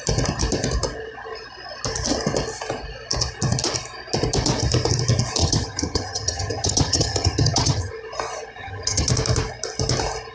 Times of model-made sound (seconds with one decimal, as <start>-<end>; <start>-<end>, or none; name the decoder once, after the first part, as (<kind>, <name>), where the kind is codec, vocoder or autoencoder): 5.4-7.9 (vocoder, HiFi-GAN); 8.6-9.1